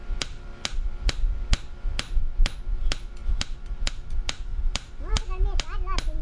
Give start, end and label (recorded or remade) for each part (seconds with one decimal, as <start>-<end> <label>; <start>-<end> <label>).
0.0-6.2 recorded